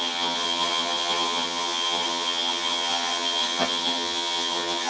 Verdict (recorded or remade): remade